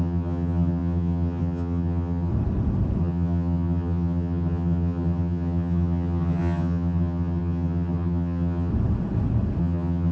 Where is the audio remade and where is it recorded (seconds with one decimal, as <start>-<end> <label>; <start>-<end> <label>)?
0.0-2.3 remade; 2.3-3.0 recorded; 3.0-8.7 remade; 8.7-9.6 recorded; 9.6-10.1 remade